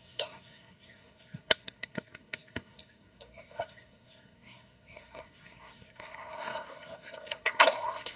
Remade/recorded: remade